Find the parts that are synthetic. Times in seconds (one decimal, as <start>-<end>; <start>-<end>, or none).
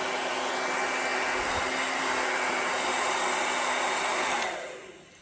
none